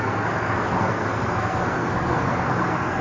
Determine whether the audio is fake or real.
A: fake